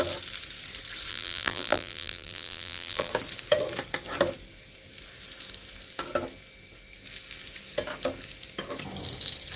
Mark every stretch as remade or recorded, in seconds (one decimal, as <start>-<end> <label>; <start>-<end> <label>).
0.0-1.1 recorded; 1.1-3.1 remade; 3.1-9.6 recorded